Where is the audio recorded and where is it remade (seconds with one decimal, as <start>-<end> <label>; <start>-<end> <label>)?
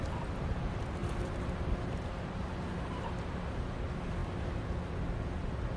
0.0-1.0 recorded; 1.0-3.1 remade; 3.1-5.8 recorded